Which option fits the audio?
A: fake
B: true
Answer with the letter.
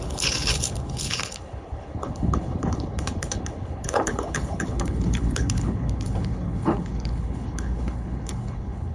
A